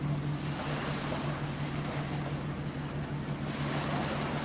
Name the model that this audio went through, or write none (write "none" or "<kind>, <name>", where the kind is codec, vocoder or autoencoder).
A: none